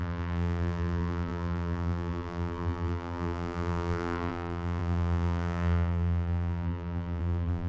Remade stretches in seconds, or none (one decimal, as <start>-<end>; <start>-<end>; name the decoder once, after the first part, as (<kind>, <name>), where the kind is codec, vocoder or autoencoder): 0.0-7.7 (vocoder, BigVGAN v2)